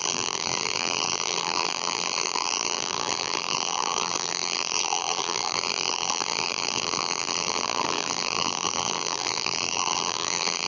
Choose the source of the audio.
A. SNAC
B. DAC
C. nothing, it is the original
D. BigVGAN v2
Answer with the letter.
D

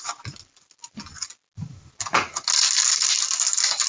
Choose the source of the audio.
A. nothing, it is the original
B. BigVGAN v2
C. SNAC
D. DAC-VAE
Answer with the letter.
A